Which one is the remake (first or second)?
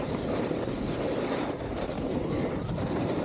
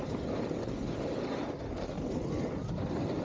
first